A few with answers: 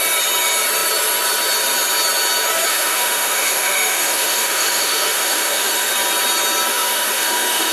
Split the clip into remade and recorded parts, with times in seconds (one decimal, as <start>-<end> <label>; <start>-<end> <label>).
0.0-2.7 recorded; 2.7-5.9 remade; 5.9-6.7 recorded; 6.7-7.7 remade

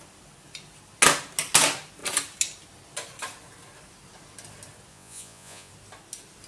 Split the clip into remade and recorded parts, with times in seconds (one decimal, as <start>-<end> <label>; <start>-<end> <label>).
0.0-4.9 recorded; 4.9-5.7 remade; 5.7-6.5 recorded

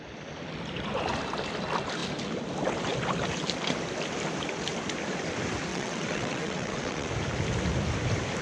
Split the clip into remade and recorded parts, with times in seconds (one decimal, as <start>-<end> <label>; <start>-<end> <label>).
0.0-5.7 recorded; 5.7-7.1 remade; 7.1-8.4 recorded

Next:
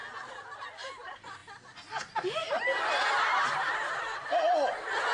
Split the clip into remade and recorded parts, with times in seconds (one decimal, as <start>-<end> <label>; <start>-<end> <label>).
0.0-5.1 recorded

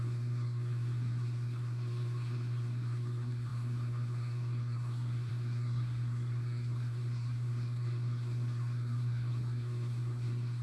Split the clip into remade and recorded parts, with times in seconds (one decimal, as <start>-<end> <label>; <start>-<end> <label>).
0.0-10.6 remade

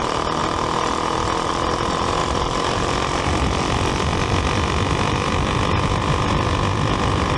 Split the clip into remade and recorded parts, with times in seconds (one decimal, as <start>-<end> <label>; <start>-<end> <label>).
0.0-0.4 remade; 0.4-1.5 recorded; 1.5-7.4 remade

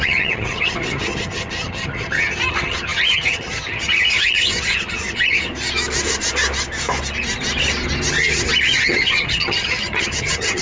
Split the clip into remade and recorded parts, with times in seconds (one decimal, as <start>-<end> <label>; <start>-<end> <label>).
0.0-5.5 remade; 5.5-8.8 recorded; 8.8-10.6 remade

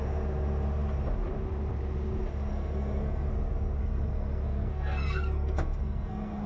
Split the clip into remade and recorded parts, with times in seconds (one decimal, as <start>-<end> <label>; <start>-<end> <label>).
0.0-2.5 recorded; 2.5-3.3 remade; 3.3-3.8 recorded; 3.8-6.5 remade